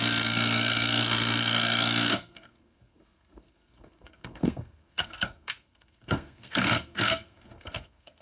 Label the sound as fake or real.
fake